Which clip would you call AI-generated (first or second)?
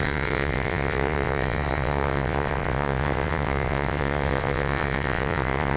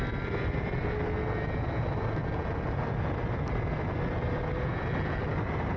first